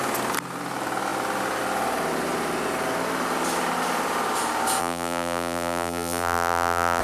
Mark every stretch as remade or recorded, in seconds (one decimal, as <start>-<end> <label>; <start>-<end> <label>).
0.0-4.8 recorded; 4.8-7.0 remade